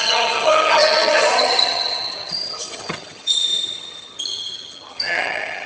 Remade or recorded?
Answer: remade